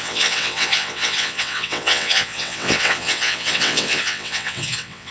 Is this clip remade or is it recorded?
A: remade